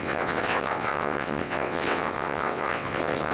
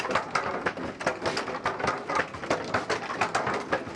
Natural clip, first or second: second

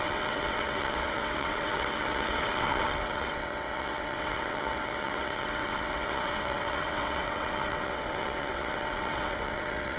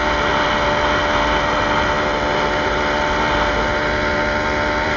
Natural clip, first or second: second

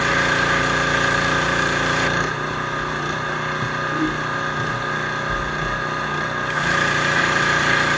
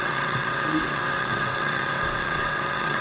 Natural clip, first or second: first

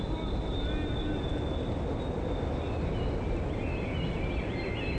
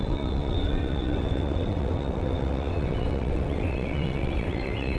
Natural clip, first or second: first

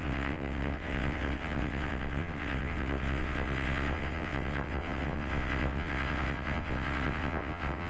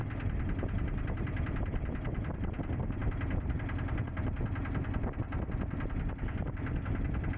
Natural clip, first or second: second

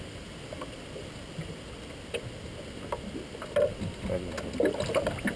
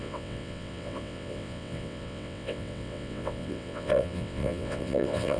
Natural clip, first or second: first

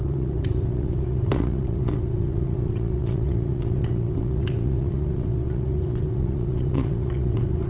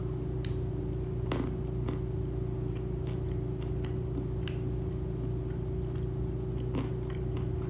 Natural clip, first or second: second